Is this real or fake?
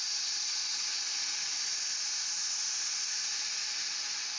real